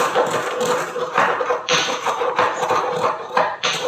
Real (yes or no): no